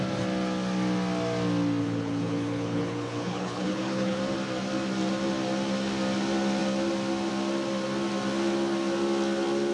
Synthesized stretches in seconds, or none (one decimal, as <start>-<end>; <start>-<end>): 1.8-4.2